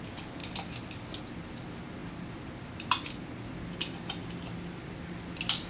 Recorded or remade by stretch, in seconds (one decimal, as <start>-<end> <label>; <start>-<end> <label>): 0.0-5.7 recorded